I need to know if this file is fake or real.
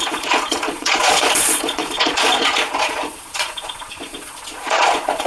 fake